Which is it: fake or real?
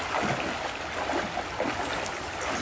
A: real